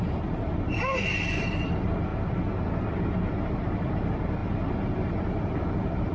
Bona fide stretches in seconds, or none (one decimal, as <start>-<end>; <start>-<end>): 2.1-2.8